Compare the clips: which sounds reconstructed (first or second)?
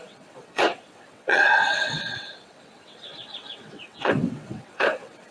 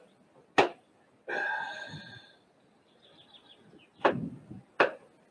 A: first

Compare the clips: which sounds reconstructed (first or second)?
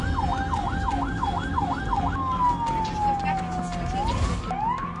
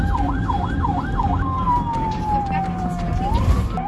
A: second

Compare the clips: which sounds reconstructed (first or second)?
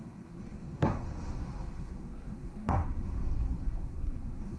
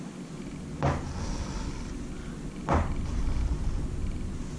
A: first